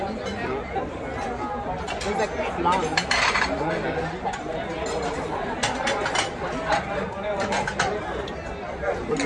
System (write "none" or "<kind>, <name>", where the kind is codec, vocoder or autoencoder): none